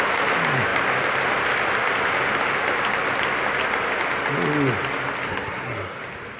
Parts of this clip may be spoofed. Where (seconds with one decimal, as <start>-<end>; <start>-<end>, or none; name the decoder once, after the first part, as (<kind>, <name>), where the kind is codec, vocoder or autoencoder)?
5.3-6.0 (codec, SNAC)